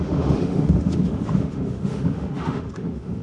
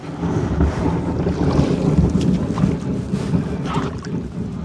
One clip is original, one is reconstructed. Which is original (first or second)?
second